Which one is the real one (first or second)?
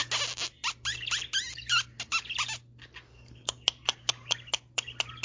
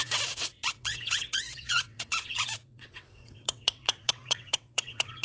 first